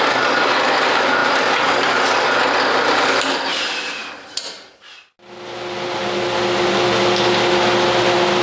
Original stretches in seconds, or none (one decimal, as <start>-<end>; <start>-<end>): 0.0-1.2; 2.9-8.4